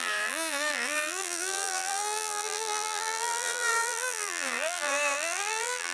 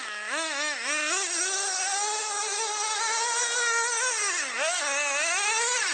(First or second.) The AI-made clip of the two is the first